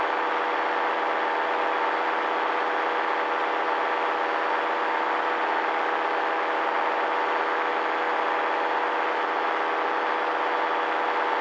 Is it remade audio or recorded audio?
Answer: recorded